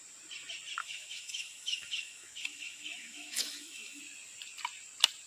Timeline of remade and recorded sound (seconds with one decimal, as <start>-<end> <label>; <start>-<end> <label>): 0.0-0.8 recorded; 0.8-4.0 remade; 4.0-5.3 recorded